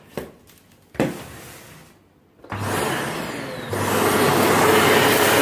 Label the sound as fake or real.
real